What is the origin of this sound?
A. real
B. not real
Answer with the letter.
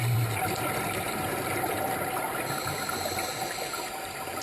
A